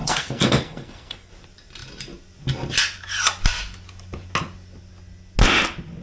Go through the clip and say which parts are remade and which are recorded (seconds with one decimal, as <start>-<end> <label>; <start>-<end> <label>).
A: 0.0-1.3 remade; 1.3-6.0 recorded